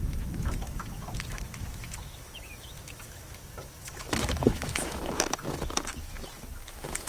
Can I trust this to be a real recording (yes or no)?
no